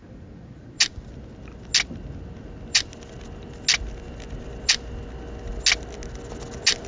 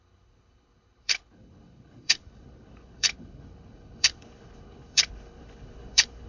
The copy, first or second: second